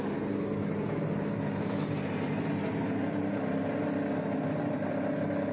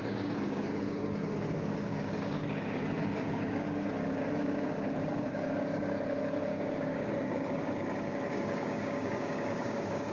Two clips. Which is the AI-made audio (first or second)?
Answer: second